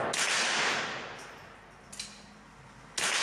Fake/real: real